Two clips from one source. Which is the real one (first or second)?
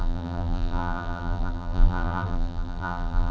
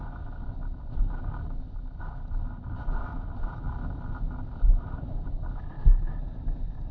second